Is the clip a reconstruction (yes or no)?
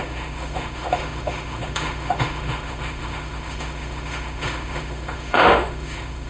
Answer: yes